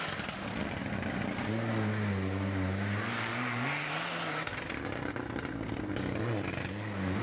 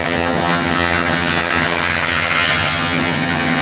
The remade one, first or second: second